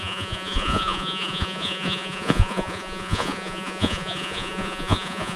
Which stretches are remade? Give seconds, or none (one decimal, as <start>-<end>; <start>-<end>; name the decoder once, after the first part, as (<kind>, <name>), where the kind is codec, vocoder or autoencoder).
0.0-5.4 (vocoder, Vocos)